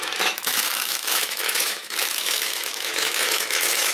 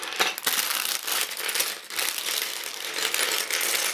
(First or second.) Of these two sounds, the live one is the second